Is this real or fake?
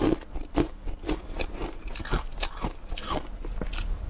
real